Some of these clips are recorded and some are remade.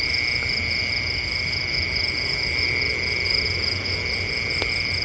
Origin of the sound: recorded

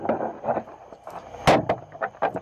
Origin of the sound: recorded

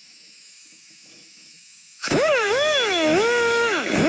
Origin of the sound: remade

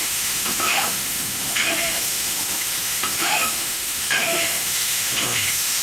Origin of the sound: remade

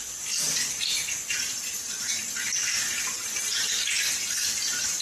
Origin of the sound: recorded